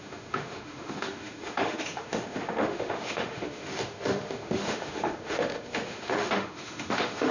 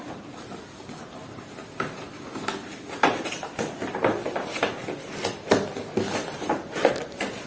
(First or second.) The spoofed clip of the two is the first